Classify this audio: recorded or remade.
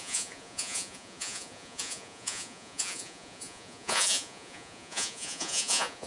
remade